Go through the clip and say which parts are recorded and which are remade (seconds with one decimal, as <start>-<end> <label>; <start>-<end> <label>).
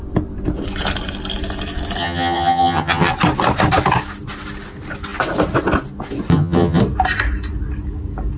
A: 0.0-2.0 recorded; 2.0-3.1 remade; 3.1-6.3 recorded; 6.3-6.8 remade; 6.8-8.4 recorded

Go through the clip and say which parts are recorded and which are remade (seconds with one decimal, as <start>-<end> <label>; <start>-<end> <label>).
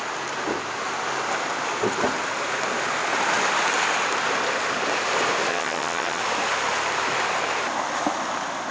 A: 0.0-5.5 recorded; 5.5-6.2 remade; 6.2-8.7 recorded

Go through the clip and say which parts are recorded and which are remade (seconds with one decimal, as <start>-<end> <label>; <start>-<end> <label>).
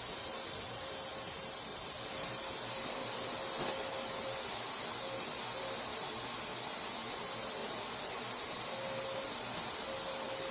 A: 0.0-10.5 recorded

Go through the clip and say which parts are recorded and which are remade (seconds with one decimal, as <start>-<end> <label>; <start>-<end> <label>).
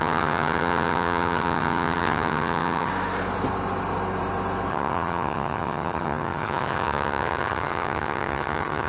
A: 0.0-2.9 remade; 2.9-4.7 recorded; 4.7-8.9 remade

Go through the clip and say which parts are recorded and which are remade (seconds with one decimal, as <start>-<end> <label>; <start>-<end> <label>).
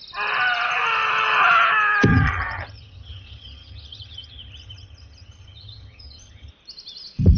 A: 0.0-2.1 recorded; 2.1-6.5 remade; 6.5-7.4 recorded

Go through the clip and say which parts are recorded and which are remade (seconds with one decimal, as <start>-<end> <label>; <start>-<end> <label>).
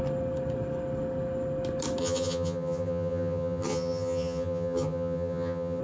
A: 0.0-2.0 recorded; 2.0-5.8 remade